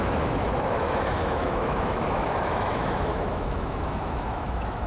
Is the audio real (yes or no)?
no